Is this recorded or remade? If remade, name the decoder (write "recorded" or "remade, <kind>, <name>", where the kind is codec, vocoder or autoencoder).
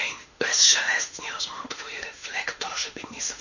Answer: remade, autoencoder, DAC-VAE